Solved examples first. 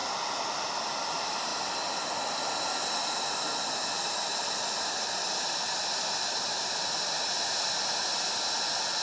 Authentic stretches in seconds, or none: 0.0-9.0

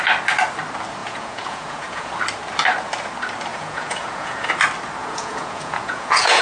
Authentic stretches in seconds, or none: 0.0-1.0; 2.1-3.5; 4.5-5.0

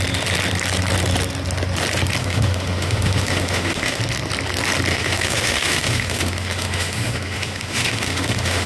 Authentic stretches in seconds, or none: 0.0-2.2; 4.0-4.9

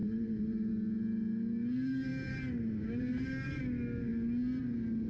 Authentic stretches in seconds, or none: 0.7-2.1; 3.6-5.1

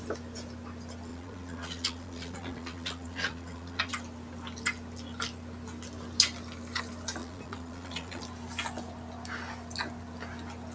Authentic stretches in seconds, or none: 0.0-1.1; 3.9-7.2; 8.2-10.7

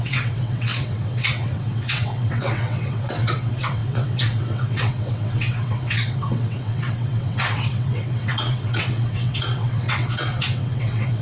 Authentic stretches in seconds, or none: none